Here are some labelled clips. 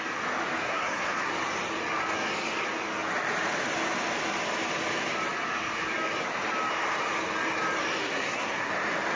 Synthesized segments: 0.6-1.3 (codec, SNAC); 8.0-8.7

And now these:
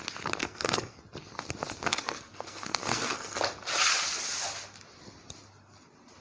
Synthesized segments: 0.4-1.0 (codec, SNAC); 1.9-3.4

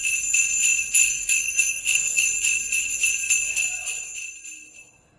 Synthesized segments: 1.0-2.3 (codec, SNAC)

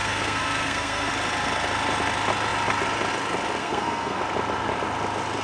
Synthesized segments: 0.0-1.1 (codec, SNAC); 3.6-4.2

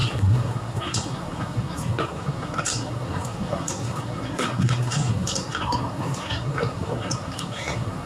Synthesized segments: 0.0-8.1 (codec, SNAC)

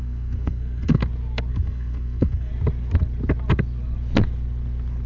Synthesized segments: 0.0-1.0 (codec, SNAC); 1.5-2.5

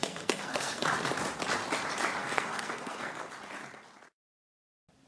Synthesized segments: 0.0-0.9 (codec, SNAC); 2.2-3.3

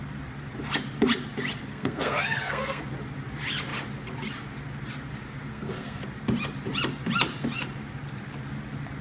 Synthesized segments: 1.7-2.8 (codec, SNAC); 5.5-6.0